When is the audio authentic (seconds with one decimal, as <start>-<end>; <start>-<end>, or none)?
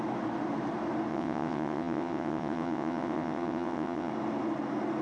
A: 0.0-1.1; 4.1-5.0